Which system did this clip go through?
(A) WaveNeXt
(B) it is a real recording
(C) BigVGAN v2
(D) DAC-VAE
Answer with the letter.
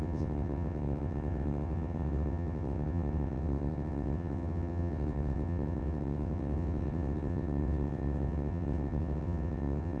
A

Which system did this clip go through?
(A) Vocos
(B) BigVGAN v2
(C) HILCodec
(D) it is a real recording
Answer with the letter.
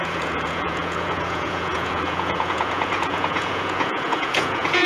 A